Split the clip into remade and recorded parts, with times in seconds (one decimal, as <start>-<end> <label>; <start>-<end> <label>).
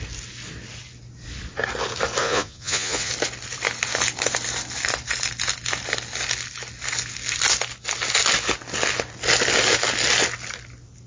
0.0-2.2 recorded; 2.2-3.1 remade; 3.1-11.1 recorded